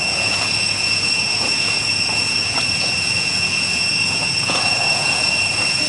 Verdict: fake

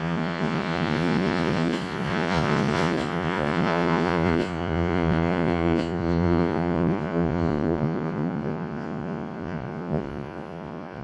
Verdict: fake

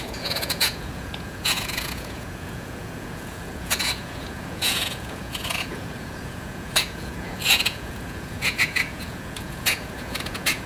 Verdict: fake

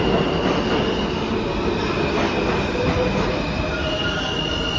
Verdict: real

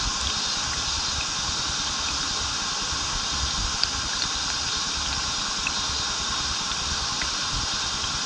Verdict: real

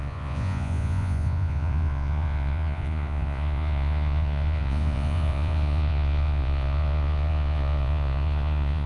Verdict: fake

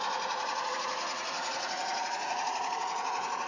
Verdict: fake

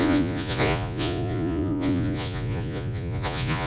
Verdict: fake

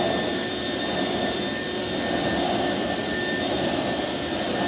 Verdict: real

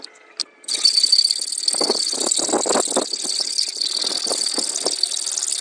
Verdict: real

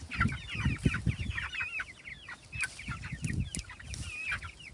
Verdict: real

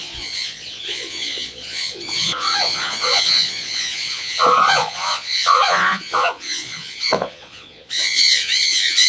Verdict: fake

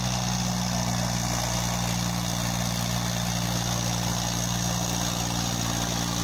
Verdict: real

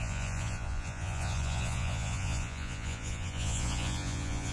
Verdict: fake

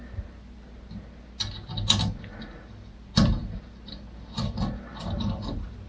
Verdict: real